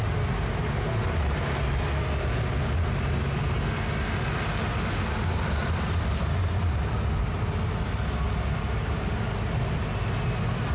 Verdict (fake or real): real